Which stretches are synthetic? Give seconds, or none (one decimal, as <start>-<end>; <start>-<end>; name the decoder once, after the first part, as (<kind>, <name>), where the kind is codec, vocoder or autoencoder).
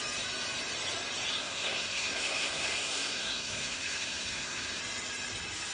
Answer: 1.4-4.8 (codec, SNAC)